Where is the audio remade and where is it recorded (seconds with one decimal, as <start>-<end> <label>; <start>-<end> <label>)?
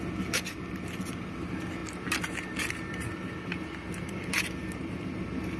0.0-5.6 recorded